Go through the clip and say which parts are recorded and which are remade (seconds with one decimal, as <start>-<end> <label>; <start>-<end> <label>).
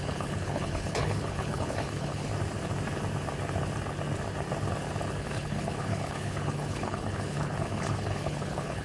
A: 0.0-2.3 remade; 2.3-5.2 recorded; 5.2-8.8 remade